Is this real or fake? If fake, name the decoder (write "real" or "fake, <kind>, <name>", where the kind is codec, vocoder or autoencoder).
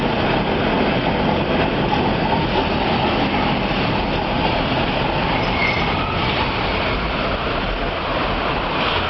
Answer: real